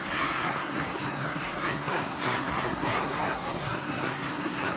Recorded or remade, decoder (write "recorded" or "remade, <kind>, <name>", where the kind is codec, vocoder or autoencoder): remade, codec, SNAC